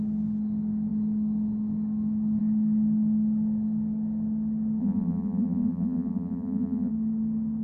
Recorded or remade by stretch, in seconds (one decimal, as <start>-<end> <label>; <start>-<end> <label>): 0.0-4.8 recorded; 4.8-6.9 remade; 6.9-7.6 recorded